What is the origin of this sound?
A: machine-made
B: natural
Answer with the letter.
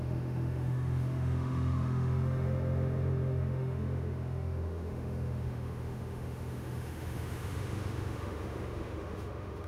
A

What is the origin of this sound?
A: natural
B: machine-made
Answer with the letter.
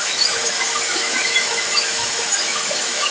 B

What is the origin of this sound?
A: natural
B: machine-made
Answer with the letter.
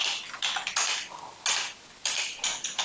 A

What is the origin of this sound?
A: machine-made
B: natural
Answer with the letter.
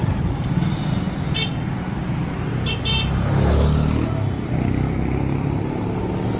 B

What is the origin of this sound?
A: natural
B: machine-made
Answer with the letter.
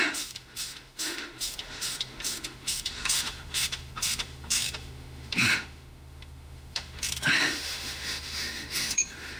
B